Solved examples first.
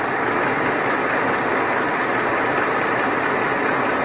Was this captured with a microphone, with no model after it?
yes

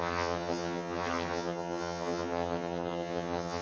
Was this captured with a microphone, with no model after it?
no